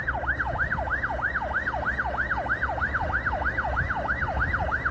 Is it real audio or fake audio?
real